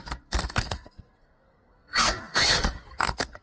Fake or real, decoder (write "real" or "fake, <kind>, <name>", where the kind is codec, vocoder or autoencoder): fake, codec, SNAC